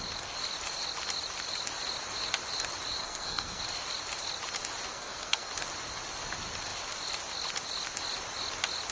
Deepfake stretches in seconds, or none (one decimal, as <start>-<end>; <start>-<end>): 3.0-3.6; 4.9-5.5